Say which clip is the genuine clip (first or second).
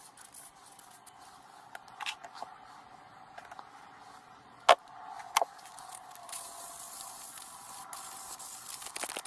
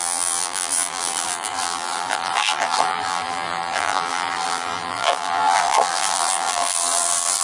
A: first